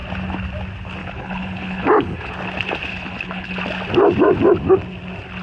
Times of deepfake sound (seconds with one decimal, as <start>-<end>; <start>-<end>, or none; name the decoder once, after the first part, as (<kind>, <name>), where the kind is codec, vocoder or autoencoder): 1.0-2.3 (codec, HILCodec); 2.9-3.6